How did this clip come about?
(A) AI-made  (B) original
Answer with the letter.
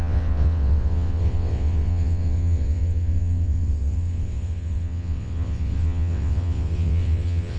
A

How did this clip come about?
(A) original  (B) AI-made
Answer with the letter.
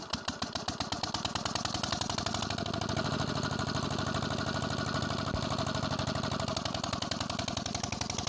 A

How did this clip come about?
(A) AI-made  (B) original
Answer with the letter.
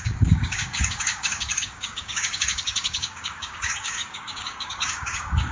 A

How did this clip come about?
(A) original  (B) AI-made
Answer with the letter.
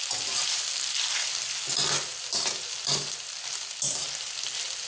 A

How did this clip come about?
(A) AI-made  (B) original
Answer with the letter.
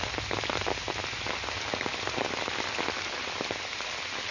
B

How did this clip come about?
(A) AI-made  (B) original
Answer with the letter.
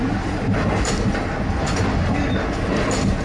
B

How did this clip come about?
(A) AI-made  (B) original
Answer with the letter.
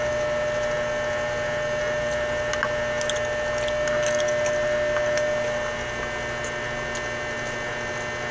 B